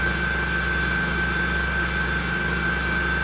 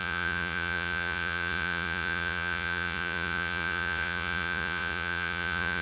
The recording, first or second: first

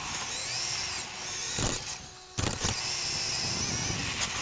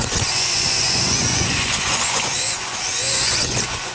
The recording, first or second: first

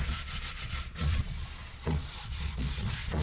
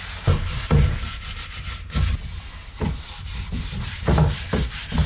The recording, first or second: second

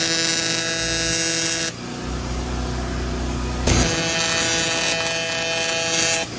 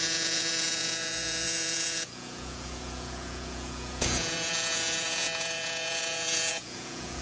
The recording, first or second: first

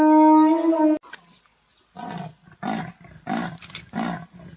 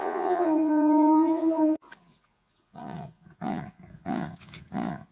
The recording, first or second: first